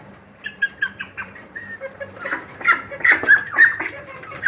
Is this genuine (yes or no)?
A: no